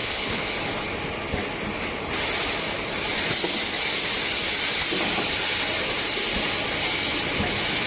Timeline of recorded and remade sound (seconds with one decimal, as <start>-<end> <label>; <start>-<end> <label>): 0.0-0.5 remade; 0.5-7.9 recorded